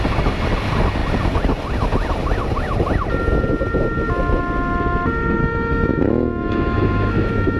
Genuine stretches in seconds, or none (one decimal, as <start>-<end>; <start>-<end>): 0.0-5.4